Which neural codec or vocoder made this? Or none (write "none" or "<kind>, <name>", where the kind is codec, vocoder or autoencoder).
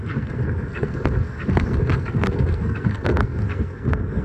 codec, SNAC